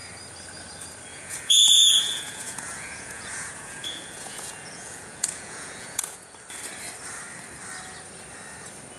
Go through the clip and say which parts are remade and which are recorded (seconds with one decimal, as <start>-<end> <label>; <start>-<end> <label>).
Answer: 0.0-1.1 recorded; 1.1-6.3 remade; 6.3-9.0 recorded